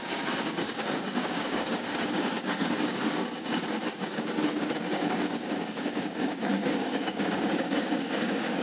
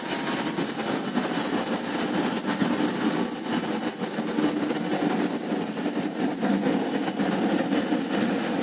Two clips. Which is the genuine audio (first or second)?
second